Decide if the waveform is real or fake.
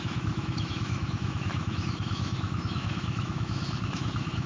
fake